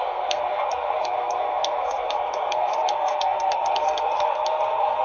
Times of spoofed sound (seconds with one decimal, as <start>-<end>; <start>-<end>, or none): 0.0-5.0